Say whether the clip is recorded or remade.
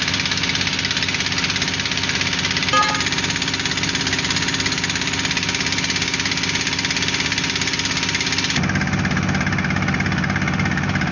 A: recorded